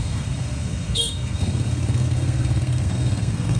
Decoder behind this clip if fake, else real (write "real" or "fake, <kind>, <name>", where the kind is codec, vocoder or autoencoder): fake, codec, SNAC